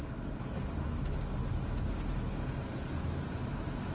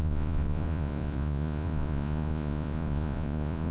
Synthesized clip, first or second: second